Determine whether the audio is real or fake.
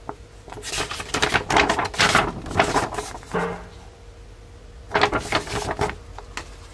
real